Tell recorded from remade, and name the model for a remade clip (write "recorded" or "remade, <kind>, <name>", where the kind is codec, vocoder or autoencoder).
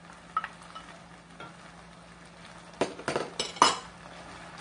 recorded